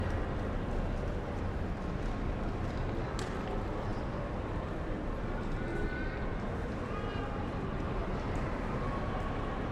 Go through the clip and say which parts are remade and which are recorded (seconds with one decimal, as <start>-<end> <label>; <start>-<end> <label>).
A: 0.0-3.9 recorded; 3.9-5.1 remade; 5.1-9.7 recorded